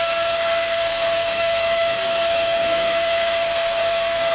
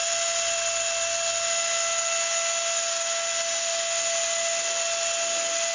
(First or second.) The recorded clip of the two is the second